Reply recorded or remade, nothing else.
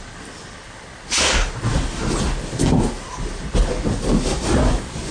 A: recorded